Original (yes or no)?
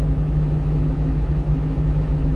no